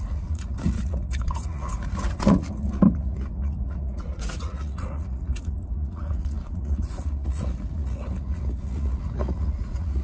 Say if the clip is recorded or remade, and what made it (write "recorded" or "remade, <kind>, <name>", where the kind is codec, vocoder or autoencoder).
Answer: remade, vocoder, Vocos